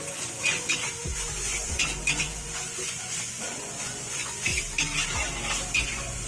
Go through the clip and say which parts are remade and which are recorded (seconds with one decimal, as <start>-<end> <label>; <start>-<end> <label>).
0.0-4.5 remade; 4.5-5.7 recorded; 5.7-6.3 remade